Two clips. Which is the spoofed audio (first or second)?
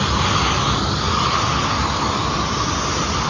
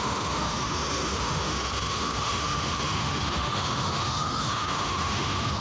second